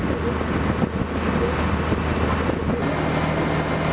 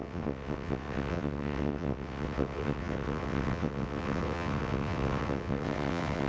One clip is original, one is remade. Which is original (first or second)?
first